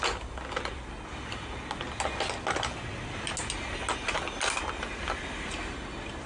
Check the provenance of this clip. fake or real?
real